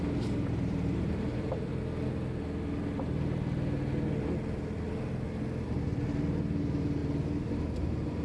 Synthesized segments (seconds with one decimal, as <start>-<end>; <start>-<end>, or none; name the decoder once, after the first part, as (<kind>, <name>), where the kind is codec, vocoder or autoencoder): 0.0-1.7 (vocoder, BigVGAN v2); 6.6-7.0; 7.5-8.2

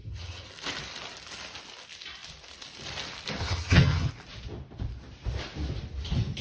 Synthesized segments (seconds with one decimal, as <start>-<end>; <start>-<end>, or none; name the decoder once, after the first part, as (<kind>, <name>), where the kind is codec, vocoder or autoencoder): 0.0-0.5 (vocoder, HiFi-GAN); 3.4-4.1

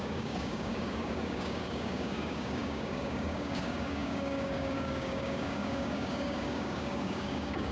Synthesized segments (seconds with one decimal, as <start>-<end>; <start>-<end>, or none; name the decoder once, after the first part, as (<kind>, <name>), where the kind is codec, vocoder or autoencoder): 0.0-7.7 (codec, DAC)

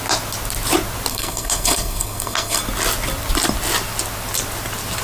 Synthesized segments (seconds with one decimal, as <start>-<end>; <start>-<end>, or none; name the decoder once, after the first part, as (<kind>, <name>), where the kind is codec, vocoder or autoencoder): 1.1-2.6 (codec, SNAC)

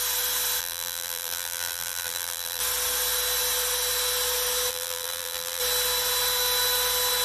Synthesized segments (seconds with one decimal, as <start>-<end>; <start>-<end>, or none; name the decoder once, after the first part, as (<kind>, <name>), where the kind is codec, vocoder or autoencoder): 0.6-2.6 (vocoder, BigVGAN v2); 4.7-5.6